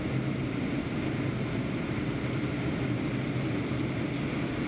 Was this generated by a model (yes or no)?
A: no